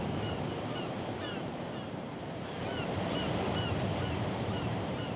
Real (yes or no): no